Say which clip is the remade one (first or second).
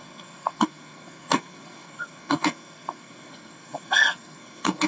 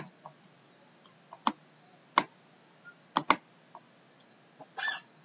first